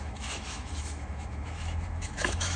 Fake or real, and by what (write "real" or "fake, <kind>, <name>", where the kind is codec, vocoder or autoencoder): fake, autoencoder, DAC-VAE